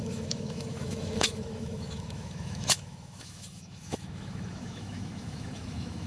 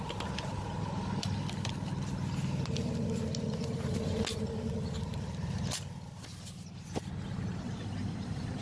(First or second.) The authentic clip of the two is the second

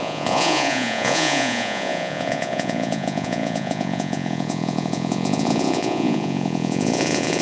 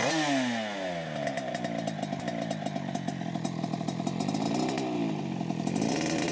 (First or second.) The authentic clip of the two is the second